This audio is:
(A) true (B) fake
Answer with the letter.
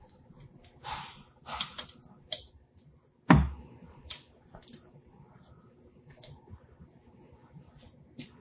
A